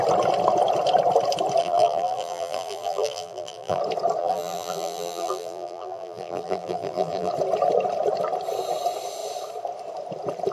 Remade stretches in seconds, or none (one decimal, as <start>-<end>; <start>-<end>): 1.6-3.8; 4.2-7.3